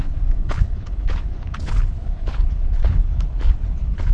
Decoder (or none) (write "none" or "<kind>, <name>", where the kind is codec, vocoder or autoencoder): codec, HILCodec